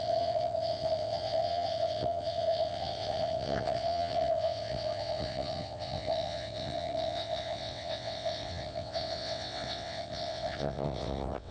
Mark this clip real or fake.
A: fake